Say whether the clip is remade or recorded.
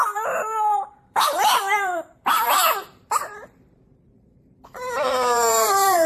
remade